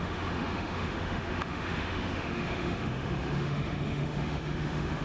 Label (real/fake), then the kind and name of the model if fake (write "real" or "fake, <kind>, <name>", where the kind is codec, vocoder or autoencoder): fake, autoencoder, DAC-VAE